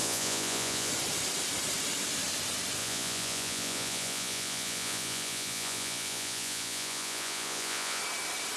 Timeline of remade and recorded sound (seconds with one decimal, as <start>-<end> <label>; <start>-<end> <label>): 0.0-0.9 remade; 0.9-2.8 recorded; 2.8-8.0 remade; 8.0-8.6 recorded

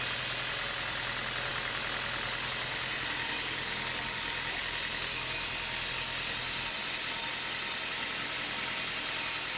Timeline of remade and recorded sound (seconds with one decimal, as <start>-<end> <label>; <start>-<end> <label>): 0.0-9.6 recorded

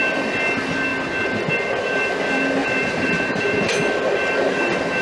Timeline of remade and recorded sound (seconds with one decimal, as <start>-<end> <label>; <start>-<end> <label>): 0.0-2.6 recorded; 2.6-3.6 remade; 3.6-5.0 recorded

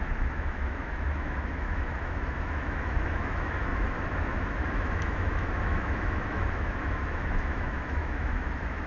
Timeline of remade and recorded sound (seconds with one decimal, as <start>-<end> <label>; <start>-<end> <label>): 0.0-8.9 remade

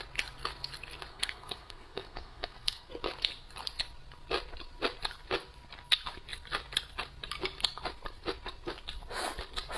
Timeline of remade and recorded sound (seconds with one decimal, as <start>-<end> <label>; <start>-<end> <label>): 0.0-1.1 recorded; 1.1-2.9 remade; 2.9-9.8 recorded